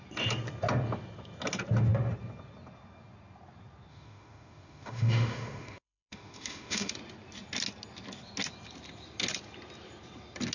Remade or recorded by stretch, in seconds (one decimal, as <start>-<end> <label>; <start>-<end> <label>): 0.0-3.9 recorded; 3.9-6.9 remade; 6.9-10.5 recorded